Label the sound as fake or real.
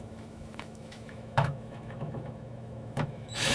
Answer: fake